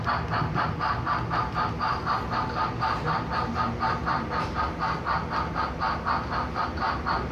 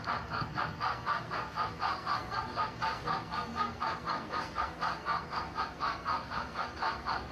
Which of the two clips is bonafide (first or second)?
first